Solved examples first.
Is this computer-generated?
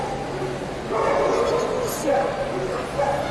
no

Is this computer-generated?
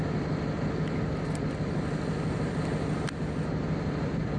no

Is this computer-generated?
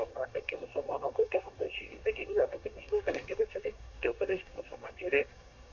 yes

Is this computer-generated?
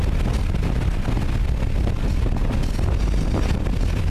no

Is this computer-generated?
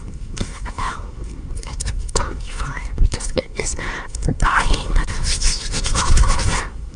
yes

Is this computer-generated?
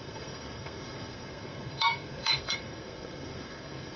yes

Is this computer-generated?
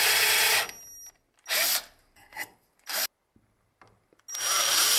no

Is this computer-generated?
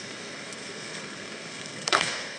yes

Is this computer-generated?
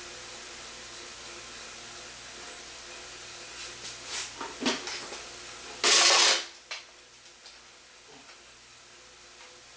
no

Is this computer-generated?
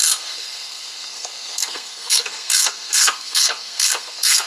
yes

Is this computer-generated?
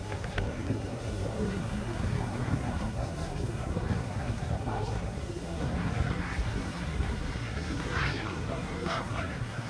yes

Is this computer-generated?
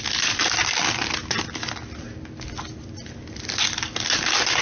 no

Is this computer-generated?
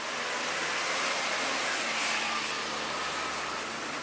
no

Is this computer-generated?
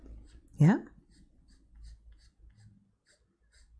no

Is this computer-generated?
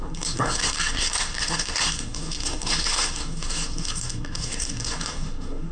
yes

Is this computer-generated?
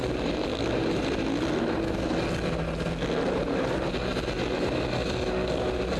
no